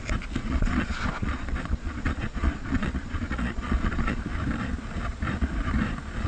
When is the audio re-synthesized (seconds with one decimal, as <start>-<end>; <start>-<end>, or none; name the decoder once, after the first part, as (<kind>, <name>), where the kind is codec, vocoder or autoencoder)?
0.4-4.2 (vocoder, Vocos)